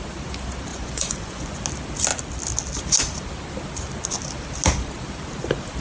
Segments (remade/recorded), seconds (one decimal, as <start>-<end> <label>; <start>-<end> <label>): 0.0-0.7 recorded; 0.7-1.6 remade; 1.6-5.8 recorded